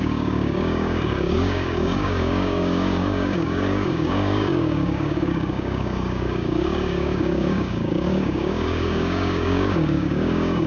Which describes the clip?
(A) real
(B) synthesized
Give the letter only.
B